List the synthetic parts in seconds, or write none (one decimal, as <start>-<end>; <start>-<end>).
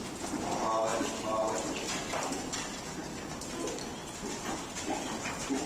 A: none